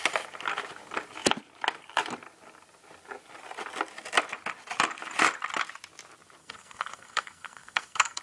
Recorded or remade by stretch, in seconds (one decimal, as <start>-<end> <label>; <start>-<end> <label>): 0.0-6.4 recorded; 6.4-8.2 remade